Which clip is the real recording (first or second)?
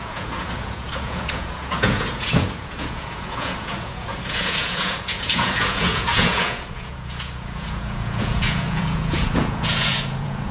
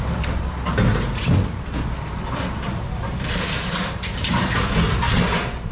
second